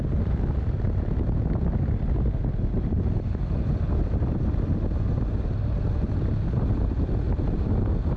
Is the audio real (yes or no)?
yes